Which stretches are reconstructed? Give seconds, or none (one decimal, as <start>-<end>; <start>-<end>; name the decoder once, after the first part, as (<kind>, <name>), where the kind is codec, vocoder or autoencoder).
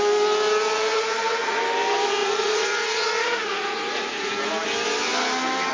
0.9-1.6 (vocoder, Vocos); 2.2-4.3